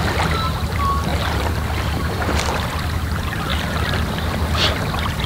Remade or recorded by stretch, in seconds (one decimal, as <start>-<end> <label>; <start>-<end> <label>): 0.0-1.1 recorded; 1.1-2.4 remade; 2.4-5.3 recorded